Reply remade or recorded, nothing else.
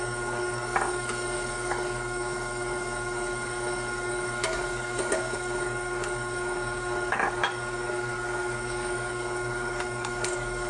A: remade